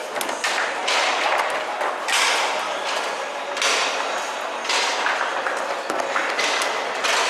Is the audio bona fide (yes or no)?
yes